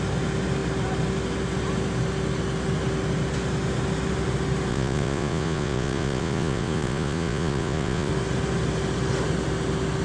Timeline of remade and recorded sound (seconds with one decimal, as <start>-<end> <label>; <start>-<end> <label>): 0.0-4.7 recorded; 4.7-8.1 remade; 8.1-10.0 recorded